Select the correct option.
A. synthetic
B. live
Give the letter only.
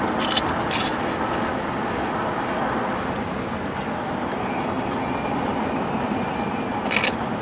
B